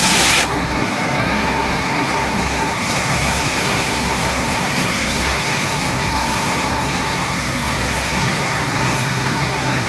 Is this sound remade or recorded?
remade